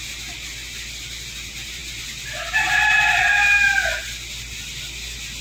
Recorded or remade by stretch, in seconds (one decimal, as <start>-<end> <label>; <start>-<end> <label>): 0.0-5.4 recorded